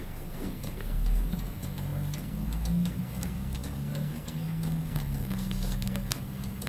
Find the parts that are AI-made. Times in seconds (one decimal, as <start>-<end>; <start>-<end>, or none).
0.0-6.7